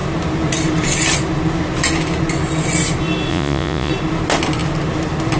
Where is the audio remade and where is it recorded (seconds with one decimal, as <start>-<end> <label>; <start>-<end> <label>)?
0.0-3.3 recorded; 3.3-3.9 remade; 3.9-5.4 recorded

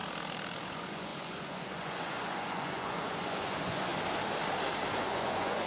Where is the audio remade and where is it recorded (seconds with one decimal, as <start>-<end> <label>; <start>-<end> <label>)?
0.0-0.7 recorded; 0.7-3.9 remade; 3.9-5.0 recorded; 5.0-5.7 remade

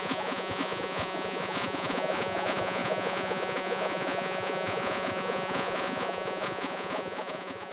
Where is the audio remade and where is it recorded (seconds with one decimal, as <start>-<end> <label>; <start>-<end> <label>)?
0.0-7.7 remade

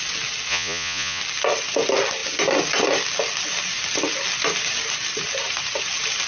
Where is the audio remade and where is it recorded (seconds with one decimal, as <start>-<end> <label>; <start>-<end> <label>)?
0.0-0.5 recorded; 0.5-1.2 remade; 1.2-6.3 recorded

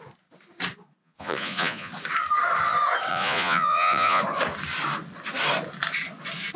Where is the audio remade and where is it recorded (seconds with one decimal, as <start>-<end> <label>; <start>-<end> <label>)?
0.0-1.0 recorded; 1.0-1.9 remade; 1.9-3.1 recorded; 3.1-4.2 remade; 4.2-6.6 recorded